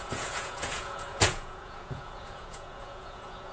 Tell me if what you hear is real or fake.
fake